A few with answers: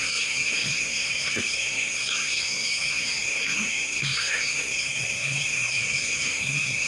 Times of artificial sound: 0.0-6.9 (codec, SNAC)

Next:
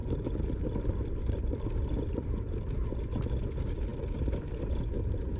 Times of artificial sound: none

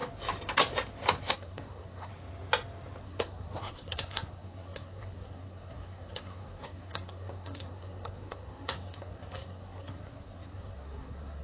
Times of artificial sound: 1.3-2.1 (codec, SNAC); 3.0-11.4